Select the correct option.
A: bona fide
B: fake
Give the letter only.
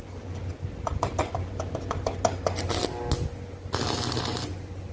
A